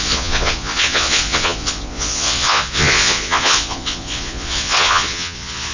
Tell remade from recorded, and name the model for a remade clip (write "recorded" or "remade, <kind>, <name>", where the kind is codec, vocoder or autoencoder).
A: remade, vocoder, Vocos